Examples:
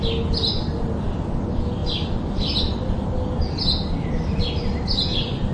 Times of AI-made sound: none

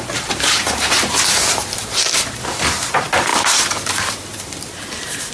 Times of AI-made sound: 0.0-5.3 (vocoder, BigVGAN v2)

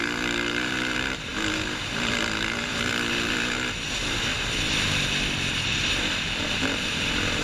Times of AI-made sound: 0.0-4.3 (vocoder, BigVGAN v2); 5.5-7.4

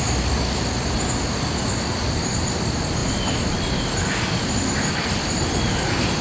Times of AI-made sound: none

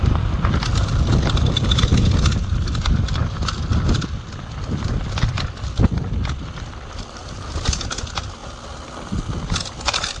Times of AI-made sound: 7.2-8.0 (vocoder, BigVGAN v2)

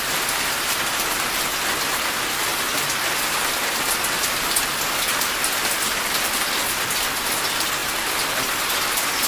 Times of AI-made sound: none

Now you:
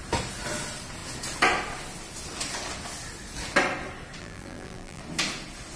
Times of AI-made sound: 4.2-5.0 (vocoder, BigVGAN v2)